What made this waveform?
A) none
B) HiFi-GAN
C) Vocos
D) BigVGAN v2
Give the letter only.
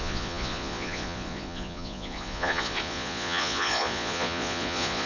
C